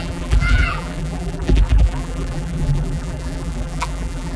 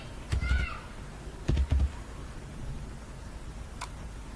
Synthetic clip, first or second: first